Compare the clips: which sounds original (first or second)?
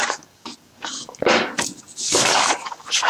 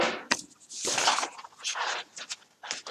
second